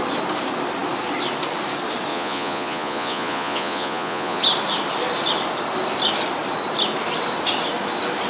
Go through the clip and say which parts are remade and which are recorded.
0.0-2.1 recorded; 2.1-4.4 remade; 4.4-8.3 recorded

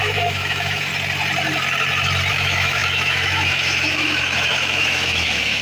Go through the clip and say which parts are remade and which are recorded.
0.0-0.9 remade; 0.9-2.3 recorded; 2.3-5.6 remade

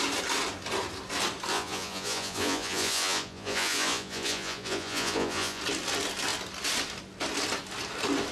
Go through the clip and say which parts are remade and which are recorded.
0.0-1.5 recorded; 1.5-5.6 remade; 5.6-8.3 recorded

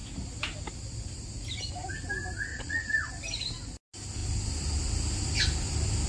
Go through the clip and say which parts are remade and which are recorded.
0.0-2.5 recorded; 2.5-3.1 remade; 3.1-6.1 recorded

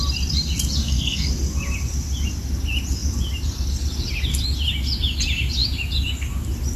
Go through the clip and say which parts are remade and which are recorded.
0.0-0.8 recorded; 0.8-1.3 remade; 1.3-6.8 recorded